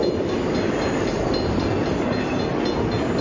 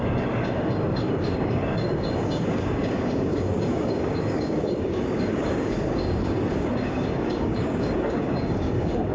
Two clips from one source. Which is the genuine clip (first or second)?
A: first